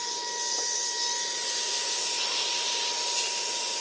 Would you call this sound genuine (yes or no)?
yes